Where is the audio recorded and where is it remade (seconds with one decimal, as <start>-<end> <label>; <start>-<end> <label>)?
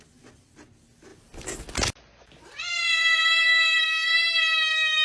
0.0-5.0 recorded